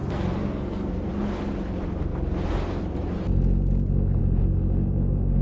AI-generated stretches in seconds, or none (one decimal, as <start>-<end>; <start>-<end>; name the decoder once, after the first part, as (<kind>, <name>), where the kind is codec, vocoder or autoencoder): 0.0-1.1 (codec, SNAC)